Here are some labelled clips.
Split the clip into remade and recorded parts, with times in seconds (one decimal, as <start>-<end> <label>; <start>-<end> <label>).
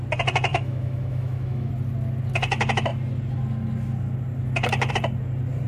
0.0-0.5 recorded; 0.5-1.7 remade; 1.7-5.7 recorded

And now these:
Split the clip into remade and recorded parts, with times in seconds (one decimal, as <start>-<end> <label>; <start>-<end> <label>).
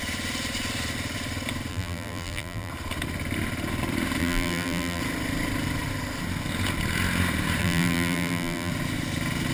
0.0-1.7 recorded; 1.7-2.7 remade; 2.7-4.2 recorded; 4.2-5.0 remade; 5.0-7.6 recorded; 7.6-8.7 remade; 8.7-9.5 recorded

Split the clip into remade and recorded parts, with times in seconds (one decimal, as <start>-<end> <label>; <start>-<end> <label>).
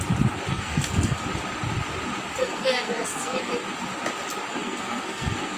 0.0-0.5 recorded; 0.5-1.2 remade; 1.2-2.4 recorded; 2.4-3.5 remade; 3.5-4.5 recorded; 4.5-5.6 remade